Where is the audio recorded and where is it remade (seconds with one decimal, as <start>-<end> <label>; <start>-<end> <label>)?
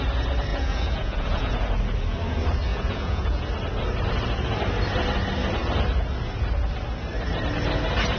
0.0-0.5 recorded; 0.5-1.8 remade; 1.8-2.7 recorded; 2.7-3.4 remade; 3.4-8.2 recorded